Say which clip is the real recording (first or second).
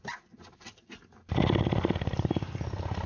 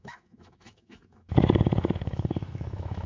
first